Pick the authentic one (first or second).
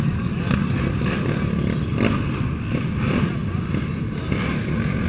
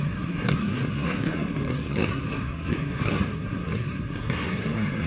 first